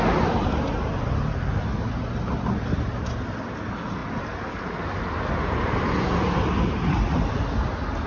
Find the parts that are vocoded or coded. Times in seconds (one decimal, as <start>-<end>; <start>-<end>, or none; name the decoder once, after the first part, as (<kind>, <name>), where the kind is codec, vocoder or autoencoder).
none